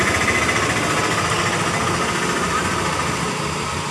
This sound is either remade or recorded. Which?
recorded